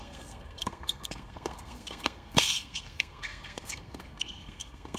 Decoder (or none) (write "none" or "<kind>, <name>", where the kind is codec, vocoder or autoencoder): codec, SNAC